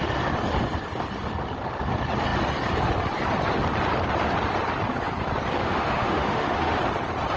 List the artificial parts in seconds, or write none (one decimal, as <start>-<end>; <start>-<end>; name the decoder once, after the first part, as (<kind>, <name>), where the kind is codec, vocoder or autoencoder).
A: 5.6-6.8 (autoencoder, DAC-VAE)